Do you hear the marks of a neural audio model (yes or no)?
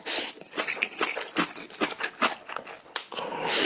no